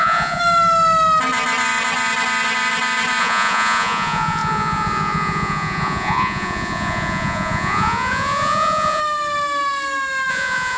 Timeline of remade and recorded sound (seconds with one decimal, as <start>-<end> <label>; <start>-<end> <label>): 0.0-0.4 remade; 0.4-3.2 recorded; 3.2-9.0 remade; 9.0-10.3 recorded; 10.3-10.8 remade